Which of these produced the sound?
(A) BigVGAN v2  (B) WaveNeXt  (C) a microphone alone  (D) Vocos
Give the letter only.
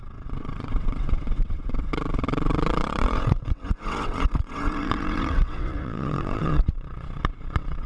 B